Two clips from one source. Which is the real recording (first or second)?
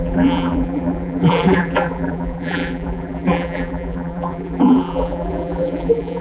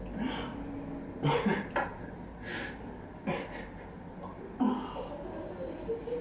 second